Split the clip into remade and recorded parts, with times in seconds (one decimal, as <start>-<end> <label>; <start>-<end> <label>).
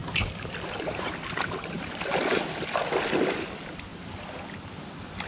0.0-5.3 recorded